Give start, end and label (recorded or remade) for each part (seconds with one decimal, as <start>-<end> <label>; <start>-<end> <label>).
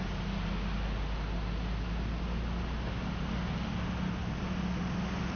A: 0.0-5.4 recorded